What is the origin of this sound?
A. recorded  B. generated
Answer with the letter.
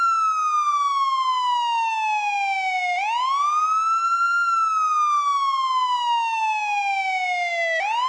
A